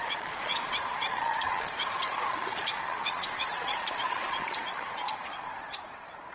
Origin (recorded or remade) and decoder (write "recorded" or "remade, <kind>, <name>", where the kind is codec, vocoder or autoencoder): remade, vocoder, Vocos